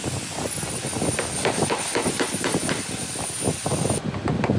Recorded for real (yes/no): yes